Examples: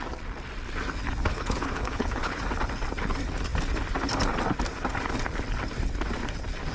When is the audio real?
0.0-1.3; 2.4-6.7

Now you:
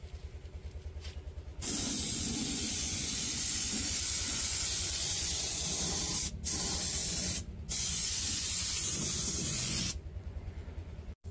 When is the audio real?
0.0-1.5; 5.6-7.0